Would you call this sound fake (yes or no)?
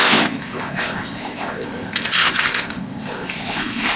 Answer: yes